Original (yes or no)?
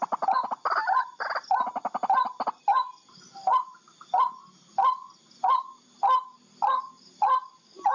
yes